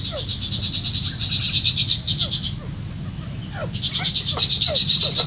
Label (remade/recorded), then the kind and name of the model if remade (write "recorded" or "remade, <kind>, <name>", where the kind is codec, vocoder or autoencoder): recorded